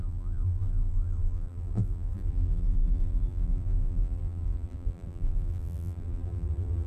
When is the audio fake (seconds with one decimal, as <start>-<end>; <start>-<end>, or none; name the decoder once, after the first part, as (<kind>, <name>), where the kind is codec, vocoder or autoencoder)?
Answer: 0.0-6.9 (vocoder, BigVGAN v2)